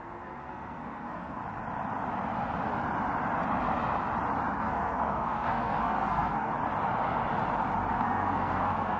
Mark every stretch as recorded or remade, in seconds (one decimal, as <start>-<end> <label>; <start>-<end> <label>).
0.0-1.4 remade; 1.4-4.6 recorded; 4.6-6.5 remade; 6.5-7.9 recorded; 7.9-9.0 remade